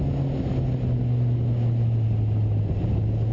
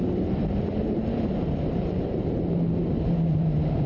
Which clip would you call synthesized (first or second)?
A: second